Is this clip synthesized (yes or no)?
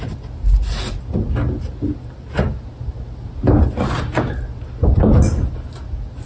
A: no